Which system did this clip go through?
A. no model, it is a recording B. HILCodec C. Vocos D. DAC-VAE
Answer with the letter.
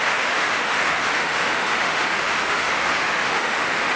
D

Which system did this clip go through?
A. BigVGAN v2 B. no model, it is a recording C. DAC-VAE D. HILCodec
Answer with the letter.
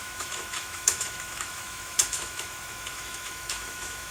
C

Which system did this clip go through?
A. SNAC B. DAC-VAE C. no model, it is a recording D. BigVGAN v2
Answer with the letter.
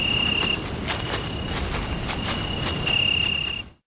C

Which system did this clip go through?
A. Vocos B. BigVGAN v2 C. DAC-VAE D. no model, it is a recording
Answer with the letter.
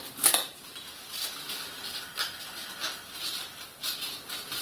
D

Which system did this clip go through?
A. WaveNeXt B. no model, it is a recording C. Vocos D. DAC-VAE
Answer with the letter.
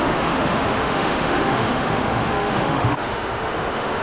D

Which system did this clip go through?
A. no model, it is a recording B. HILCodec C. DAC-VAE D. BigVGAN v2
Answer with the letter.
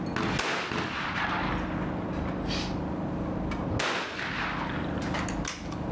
A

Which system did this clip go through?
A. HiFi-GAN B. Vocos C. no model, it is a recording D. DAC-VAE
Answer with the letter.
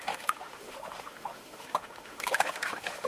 D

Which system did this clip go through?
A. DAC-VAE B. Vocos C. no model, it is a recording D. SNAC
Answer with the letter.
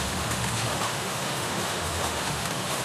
A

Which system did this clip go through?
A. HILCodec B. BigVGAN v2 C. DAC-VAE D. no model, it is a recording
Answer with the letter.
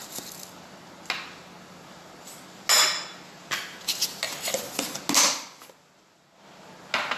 D